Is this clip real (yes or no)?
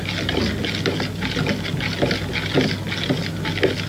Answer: yes